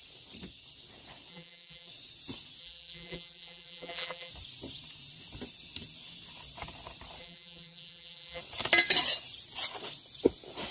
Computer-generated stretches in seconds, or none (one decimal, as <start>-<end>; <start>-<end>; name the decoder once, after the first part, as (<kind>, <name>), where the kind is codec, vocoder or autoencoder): 1.3-1.9 (vocoder, BigVGAN v2); 2.6-4.3; 7.2-8.4